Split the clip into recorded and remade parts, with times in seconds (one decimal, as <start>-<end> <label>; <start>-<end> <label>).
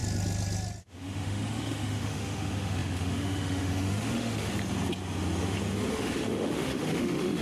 0.0-0.8 recorded; 0.8-4.5 remade; 4.5-5.9 recorded; 5.9-7.4 remade